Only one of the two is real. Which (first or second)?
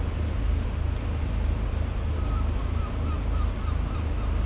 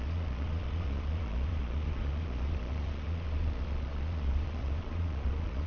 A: first